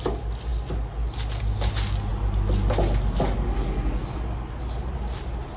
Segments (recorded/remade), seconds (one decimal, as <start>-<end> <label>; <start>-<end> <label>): 0.0-5.6 recorded